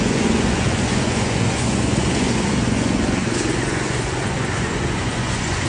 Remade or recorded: remade